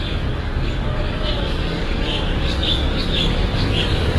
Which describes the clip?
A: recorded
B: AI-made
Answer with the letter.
B